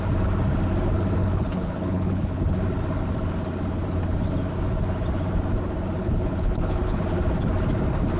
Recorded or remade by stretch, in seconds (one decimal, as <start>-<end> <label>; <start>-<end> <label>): 0.0-1.2 recorded; 1.2-2.4 remade; 2.4-6.0 recorded; 6.0-7.0 remade; 7.0-8.2 recorded

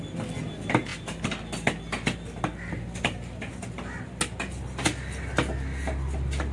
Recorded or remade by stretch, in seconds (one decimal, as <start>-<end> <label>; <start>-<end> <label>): 0.0-6.5 recorded

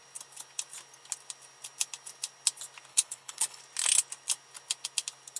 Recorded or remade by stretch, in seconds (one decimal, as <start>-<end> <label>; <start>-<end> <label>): 0.0-2.9 recorded; 2.9-3.6 remade; 3.6-5.4 recorded

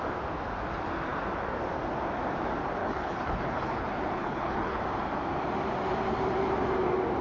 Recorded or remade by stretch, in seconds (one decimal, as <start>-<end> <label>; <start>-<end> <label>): 0.0-2.8 recorded; 2.8-4.8 remade; 4.8-7.2 recorded

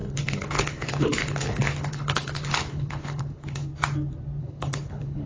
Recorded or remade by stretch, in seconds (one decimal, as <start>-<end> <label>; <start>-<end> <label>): 0.0-3.7 remade; 3.7-4.4 recorded; 4.4-5.3 remade

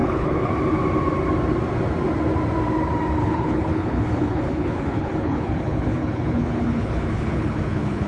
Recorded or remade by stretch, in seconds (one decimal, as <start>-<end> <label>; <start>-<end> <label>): 0.0-0.5 remade; 0.5-3.2 recorded; 3.2-8.1 remade

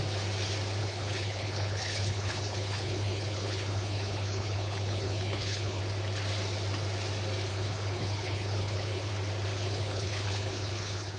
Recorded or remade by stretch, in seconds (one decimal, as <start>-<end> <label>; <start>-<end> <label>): 0.0-0.8 recorded; 0.8-5.8 remade; 5.8-7.5 recorded; 7.5-9.1 remade; 9.1-9.5 recorded; 9.5-11.2 remade